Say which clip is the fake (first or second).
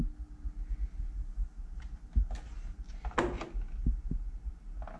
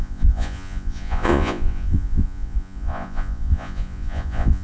second